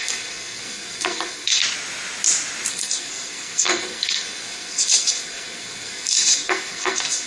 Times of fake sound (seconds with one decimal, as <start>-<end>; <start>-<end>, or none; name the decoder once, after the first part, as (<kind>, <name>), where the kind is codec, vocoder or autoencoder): 0.0-1.6 (codec, SNAC); 2.7-7.3